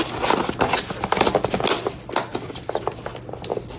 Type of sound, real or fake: real